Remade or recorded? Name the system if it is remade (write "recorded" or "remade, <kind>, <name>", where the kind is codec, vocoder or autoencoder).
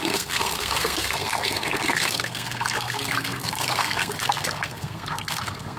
remade, codec, SNAC